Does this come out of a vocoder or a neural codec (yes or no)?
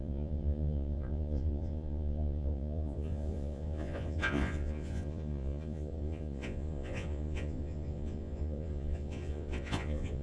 yes